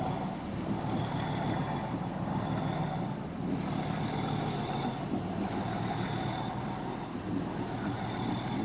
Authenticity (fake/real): real